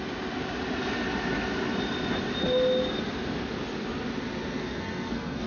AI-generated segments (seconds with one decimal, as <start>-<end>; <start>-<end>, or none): 4.6-5.5